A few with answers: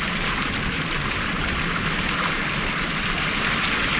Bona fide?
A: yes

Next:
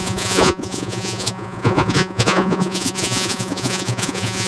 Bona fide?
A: no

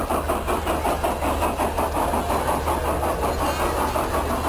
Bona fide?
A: yes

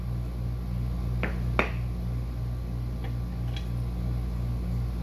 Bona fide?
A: yes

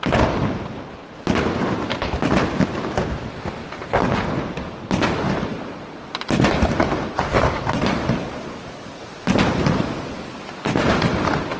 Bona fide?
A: yes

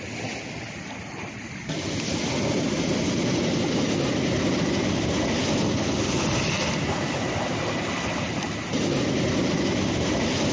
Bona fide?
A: yes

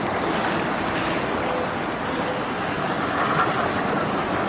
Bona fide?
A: yes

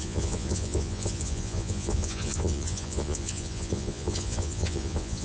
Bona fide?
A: no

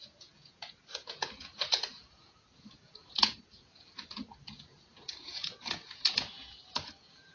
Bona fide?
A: no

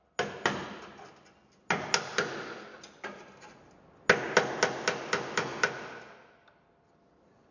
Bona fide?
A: yes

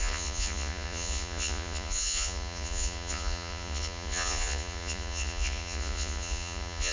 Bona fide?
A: no